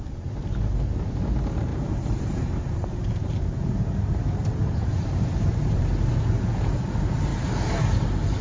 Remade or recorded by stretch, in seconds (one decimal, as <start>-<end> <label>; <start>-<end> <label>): 0.0-1.7 recorded; 1.7-5.8 remade; 5.8-7.3 recorded; 7.3-8.4 remade